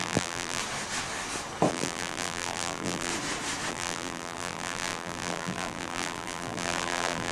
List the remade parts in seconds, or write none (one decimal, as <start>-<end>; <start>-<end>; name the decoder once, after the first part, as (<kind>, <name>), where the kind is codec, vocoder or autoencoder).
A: 0.0-0.6 (vocoder, BigVGAN v2); 1.7-3.1; 3.7-7.3